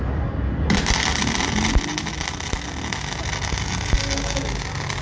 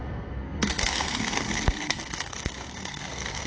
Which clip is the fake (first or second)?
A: second